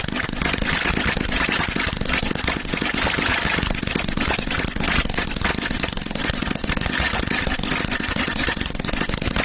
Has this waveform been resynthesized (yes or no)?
no